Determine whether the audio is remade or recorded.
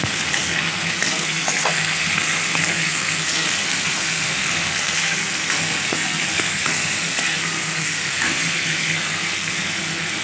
remade